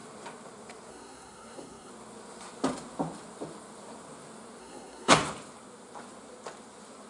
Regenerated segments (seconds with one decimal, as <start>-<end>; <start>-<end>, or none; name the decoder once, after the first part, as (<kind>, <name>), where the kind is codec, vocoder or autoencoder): 0.9-1.9 (codec, SNAC); 4.6-5.2